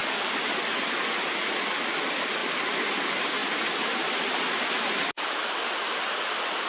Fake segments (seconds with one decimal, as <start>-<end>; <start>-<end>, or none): 2.4-2.9; 3.4-5.1

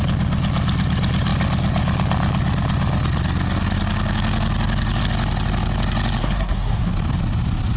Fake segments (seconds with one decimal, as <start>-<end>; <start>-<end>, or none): 6.2-6.9